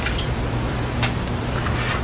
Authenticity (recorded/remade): recorded